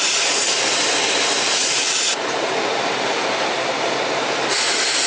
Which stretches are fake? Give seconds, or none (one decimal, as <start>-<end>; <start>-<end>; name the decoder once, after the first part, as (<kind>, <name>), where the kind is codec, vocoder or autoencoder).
1.6-5.1 (vocoder, BigVGAN v2)